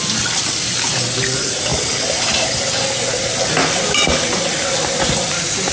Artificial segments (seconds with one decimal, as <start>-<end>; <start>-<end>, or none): none